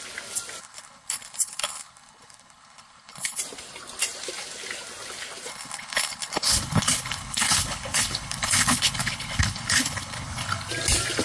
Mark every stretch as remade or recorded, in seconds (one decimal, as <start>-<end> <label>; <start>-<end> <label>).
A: 0.0-0.6 recorded; 0.6-3.4 remade; 3.4-5.5 recorded; 5.5-10.7 remade; 10.7-11.2 recorded